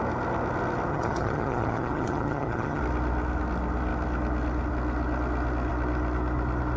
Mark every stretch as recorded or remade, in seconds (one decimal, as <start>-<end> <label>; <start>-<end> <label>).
0.0-0.9 recorded; 0.9-2.8 remade; 2.8-6.8 recorded

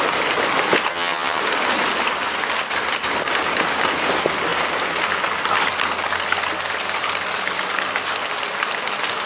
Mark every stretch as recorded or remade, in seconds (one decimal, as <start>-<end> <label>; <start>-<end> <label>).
0.0-0.9 recorded; 0.9-1.4 remade; 1.4-9.3 recorded

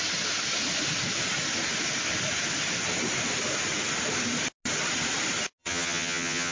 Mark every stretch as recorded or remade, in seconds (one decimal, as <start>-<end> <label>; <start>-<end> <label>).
0.0-5.6 recorded; 5.6-6.5 remade

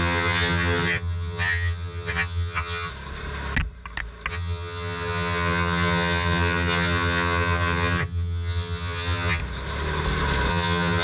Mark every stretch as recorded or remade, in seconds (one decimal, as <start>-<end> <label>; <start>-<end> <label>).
0.0-2.9 remade; 2.9-4.3 recorded; 4.3-9.4 remade; 9.4-10.5 recorded; 10.5-11.0 remade